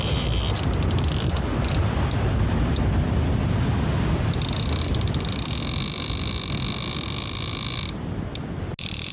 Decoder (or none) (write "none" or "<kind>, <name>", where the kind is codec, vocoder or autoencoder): none